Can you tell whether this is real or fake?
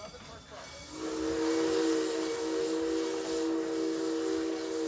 real